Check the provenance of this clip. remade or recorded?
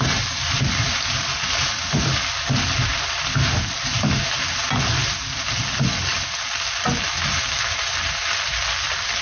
recorded